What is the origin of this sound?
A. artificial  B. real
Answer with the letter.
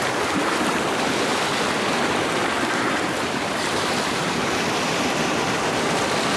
B